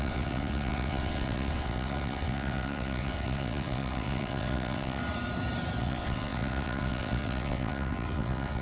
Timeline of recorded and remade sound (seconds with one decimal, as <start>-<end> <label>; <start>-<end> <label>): 0.0-5.0 remade; 5.0-5.8 recorded; 5.8-8.6 remade